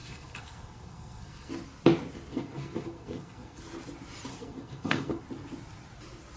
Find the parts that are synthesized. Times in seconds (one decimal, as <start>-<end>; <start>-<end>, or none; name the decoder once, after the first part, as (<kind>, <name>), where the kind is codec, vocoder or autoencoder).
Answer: 0.0-1.5 (codec, SNAC); 2.3-3.6; 4.3-5.2